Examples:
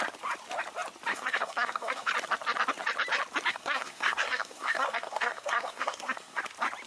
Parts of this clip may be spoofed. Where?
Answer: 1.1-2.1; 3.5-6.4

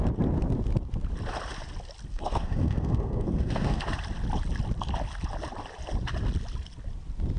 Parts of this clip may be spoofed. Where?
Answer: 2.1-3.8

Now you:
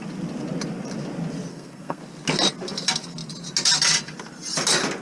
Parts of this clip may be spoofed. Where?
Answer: 1.5-2.0